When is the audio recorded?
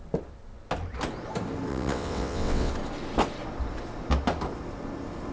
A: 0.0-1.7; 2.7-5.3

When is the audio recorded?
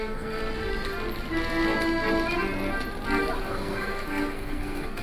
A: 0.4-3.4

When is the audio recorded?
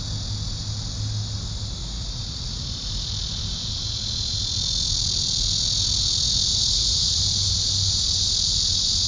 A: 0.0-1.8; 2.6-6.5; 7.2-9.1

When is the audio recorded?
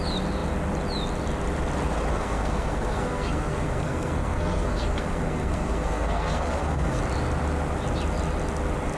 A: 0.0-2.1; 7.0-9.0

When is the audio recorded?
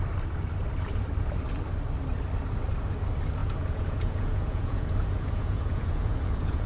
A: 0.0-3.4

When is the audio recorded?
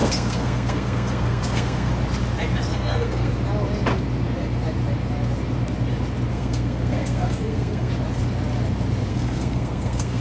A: 1.9-2.7; 3.3-6.3; 7.9-9.1